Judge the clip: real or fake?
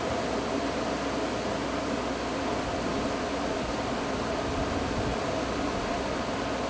real